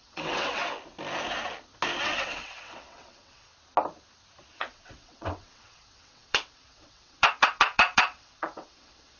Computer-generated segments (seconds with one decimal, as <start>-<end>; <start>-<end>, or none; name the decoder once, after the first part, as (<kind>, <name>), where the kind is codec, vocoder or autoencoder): 0.0-0.6 (vocoder, WaveNeXt); 2.0-3.5; 4.5-9.2